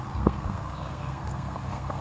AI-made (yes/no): yes